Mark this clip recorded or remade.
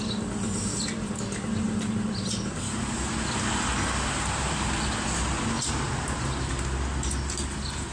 recorded